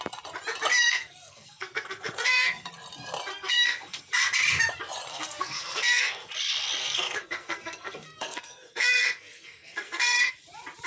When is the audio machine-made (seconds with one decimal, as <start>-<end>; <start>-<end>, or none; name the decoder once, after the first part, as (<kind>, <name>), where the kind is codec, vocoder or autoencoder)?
0.7-2.7 (codec, SNAC); 3.3-4.1; 5.1-6.3; 6.8-10.3